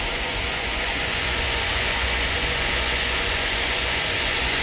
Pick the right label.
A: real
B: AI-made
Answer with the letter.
B